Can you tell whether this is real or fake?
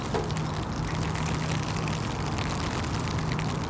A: real